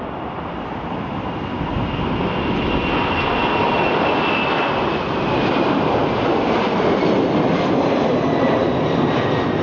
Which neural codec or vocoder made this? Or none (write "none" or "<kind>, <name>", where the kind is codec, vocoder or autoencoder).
none